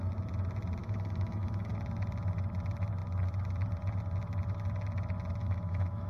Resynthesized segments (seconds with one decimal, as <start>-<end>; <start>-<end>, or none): 0.8-1.7; 5.4-6.1